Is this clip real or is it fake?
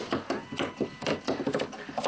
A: real